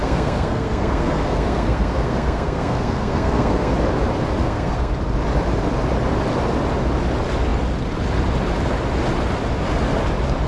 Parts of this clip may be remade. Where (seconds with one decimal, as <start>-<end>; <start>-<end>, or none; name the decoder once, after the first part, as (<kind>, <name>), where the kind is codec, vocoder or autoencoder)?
0.0-3.7 (codec, SNAC); 4.4-4.9